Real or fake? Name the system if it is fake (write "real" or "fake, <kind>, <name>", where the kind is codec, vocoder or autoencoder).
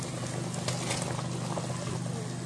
real